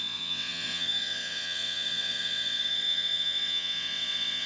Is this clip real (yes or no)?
no